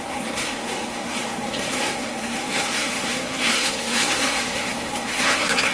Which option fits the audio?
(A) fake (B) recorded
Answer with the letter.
A